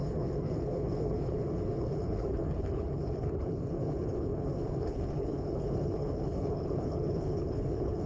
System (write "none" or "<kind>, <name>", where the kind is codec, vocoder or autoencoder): codec, HILCodec